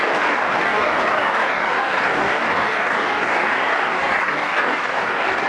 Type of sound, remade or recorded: remade